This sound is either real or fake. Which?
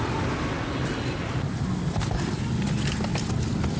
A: real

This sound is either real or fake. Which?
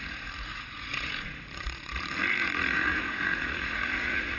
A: fake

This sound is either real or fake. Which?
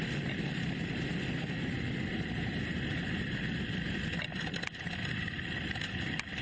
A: real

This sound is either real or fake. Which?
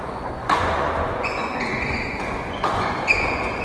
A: fake